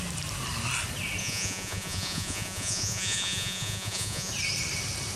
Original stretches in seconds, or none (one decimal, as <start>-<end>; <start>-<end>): 0.0-1.2; 4.3-5.2